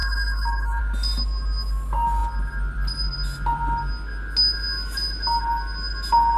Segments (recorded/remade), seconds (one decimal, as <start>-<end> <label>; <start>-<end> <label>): 0.0-0.8 remade; 0.8-6.4 recorded